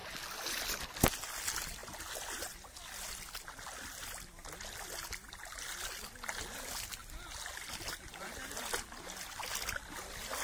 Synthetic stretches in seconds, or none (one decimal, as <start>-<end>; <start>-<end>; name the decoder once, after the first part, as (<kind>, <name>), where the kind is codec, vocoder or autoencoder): none